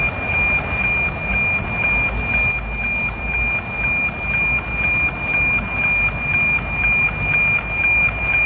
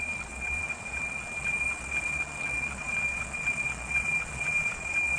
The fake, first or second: second